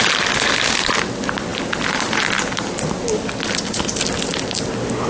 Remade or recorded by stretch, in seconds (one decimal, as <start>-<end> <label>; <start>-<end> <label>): 0.0-5.1 recorded